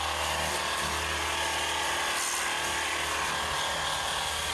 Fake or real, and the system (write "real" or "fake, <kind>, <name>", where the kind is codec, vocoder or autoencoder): real